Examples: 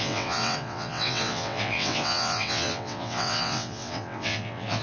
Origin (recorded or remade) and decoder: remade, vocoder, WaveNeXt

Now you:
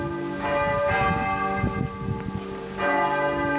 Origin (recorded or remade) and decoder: recorded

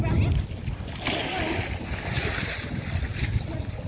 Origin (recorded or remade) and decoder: recorded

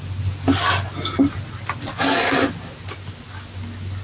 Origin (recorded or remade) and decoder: recorded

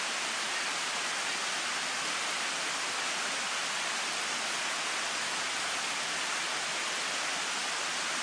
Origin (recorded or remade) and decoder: recorded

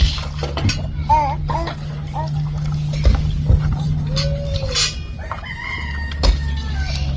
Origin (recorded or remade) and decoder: recorded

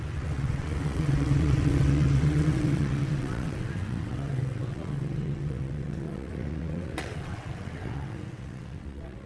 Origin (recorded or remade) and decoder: remade, vocoder, WaveNeXt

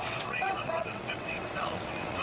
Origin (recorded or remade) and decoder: remade, vocoder, WaveNeXt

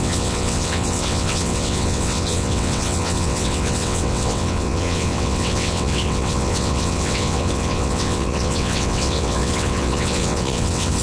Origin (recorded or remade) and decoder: remade, vocoder, WaveNeXt